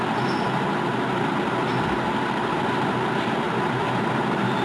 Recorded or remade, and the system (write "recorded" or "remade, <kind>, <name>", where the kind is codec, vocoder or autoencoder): recorded